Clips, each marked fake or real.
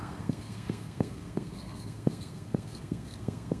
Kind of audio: fake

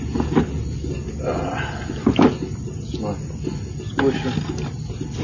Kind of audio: real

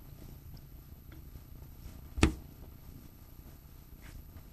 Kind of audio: fake